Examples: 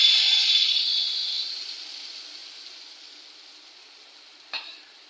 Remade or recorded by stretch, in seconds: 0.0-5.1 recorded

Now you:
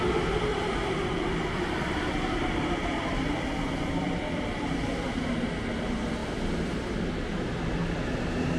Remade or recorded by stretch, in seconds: 0.0-0.5 recorded; 0.5-5.0 remade; 5.0-8.6 recorded